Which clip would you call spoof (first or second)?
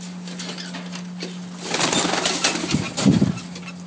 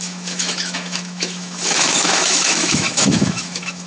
second